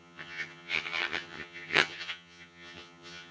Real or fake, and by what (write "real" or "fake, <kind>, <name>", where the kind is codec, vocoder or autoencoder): fake, vocoder, HiFi-GAN